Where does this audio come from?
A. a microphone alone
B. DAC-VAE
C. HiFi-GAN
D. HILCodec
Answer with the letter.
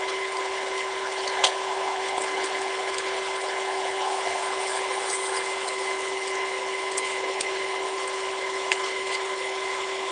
D